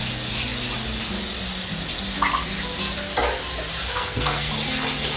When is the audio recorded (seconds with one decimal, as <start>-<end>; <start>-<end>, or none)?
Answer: 0.0-3.9; 4.5-5.2